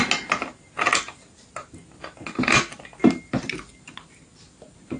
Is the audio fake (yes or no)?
no